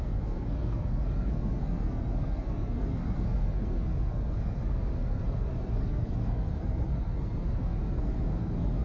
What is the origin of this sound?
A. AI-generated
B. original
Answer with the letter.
A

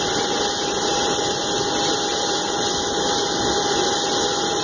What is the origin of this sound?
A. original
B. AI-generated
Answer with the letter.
A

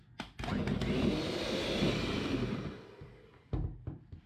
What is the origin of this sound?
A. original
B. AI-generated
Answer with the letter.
A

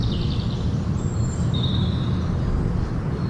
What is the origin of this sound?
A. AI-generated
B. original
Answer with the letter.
B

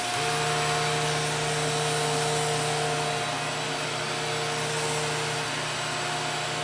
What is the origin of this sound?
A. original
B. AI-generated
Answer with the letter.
A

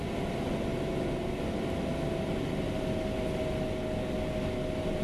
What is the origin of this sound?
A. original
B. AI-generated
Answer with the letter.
A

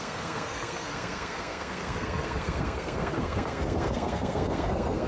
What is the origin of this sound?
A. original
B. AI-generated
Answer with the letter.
B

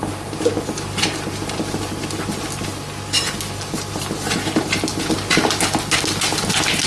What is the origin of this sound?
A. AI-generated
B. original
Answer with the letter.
B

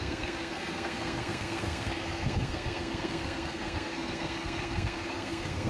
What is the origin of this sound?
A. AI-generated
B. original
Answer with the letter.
A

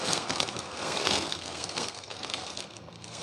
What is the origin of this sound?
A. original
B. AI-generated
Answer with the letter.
B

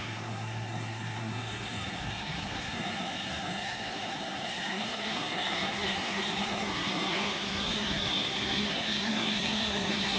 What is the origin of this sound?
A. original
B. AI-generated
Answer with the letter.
B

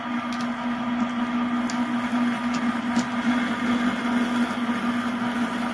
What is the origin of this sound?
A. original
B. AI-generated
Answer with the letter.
A